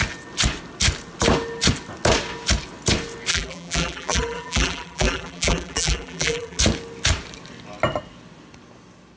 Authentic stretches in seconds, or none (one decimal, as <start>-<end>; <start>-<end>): 0.0-3.3; 6.6-9.2